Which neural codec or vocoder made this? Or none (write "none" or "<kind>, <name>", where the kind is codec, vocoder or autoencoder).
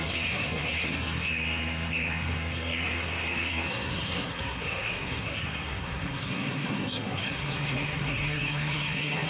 codec, SNAC